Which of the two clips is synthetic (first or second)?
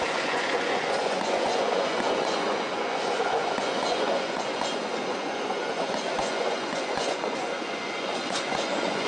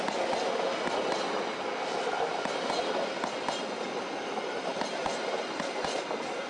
first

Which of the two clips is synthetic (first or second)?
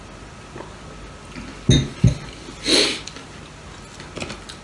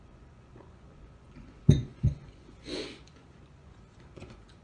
second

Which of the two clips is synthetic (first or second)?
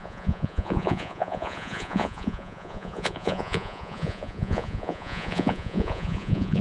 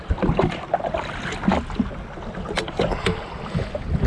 first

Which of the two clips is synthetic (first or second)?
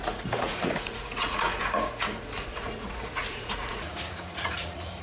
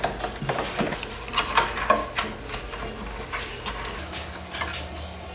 first